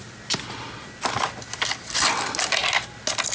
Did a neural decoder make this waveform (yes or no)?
no